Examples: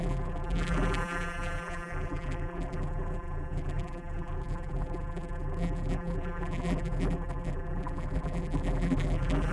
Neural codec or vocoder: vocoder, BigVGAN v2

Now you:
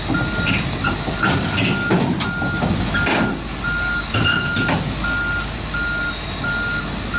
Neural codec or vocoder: none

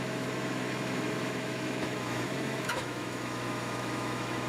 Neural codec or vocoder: autoencoder, DAC-VAE